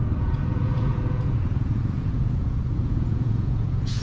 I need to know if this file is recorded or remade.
remade